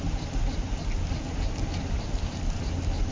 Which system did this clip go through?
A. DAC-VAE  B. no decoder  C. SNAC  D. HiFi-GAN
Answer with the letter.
B